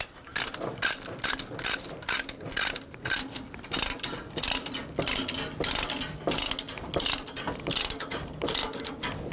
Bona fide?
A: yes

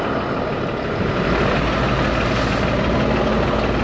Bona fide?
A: yes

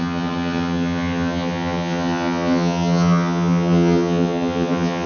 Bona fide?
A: no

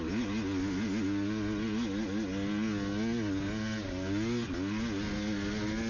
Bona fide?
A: yes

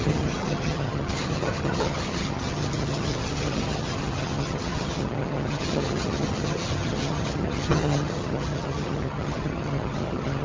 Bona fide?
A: no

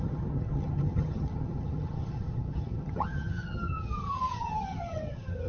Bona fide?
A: no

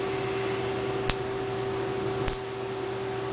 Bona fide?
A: yes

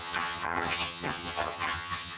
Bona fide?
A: no